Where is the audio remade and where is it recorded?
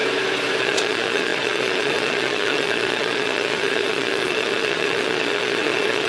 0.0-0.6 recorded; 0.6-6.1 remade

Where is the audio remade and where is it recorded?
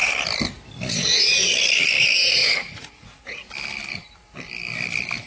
0.0-2.4 recorded; 2.4-3.5 remade; 3.5-5.3 recorded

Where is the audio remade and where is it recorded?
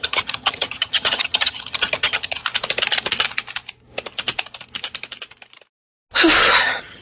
0.0-2.4 remade; 2.4-6.6 recorded; 6.6-7.0 remade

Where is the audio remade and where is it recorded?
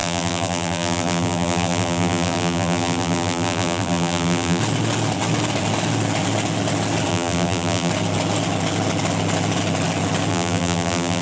0.0-4.6 remade; 4.6-7.1 recorded; 7.1-7.9 remade; 7.9-10.3 recorded; 10.3-11.2 remade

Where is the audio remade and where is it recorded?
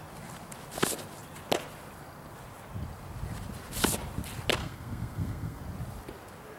0.0-4.6 recorded; 4.6-5.6 remade; 5.6-6.6 recorded